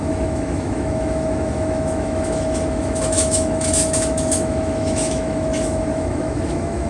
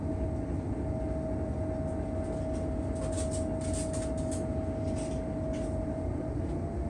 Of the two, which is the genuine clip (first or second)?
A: second